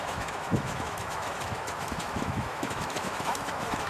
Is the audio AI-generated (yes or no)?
yes